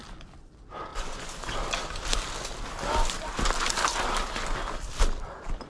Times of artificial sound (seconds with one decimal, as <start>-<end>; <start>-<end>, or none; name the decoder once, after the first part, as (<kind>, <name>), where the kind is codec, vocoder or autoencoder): 0.9-1.5 (vocoder, Vocos)